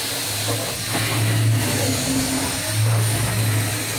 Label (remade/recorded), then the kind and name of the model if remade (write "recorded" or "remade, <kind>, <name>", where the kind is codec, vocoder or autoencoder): recorded